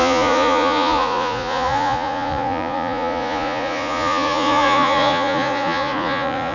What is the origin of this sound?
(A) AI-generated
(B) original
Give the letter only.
A